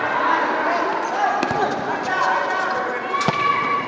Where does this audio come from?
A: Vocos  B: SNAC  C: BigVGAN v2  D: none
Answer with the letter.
D